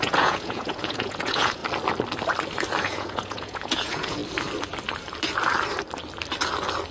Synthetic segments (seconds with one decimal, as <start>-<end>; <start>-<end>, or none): 0.0-1.6; 2.8-4.2